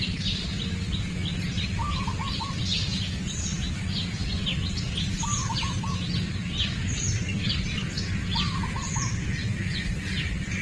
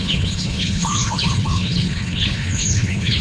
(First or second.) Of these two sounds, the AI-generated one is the second